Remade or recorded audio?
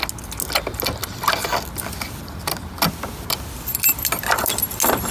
recorded